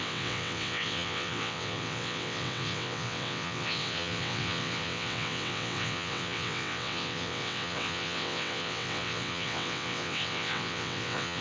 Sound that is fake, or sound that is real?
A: fake